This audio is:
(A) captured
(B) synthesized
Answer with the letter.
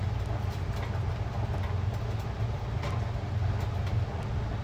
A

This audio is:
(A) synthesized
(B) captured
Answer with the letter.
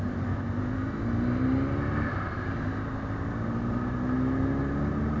B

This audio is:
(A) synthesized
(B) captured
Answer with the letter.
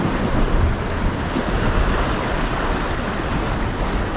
B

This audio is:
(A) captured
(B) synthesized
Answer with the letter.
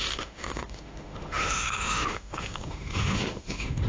B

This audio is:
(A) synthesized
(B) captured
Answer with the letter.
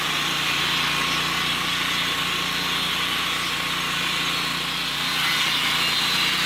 B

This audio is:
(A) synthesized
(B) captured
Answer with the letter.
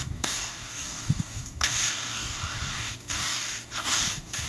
A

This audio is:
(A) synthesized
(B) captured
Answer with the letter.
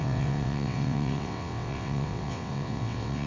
A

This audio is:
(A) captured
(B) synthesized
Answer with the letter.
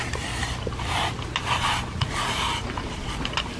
A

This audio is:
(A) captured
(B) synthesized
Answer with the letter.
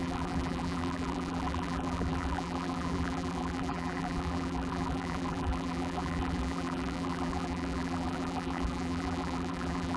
B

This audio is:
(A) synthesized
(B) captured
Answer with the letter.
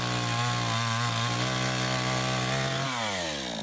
B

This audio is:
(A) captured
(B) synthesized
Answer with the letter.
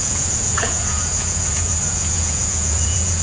B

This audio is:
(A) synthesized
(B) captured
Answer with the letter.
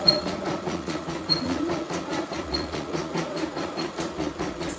A